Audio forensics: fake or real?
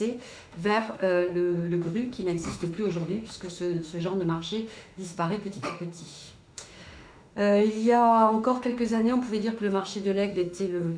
fake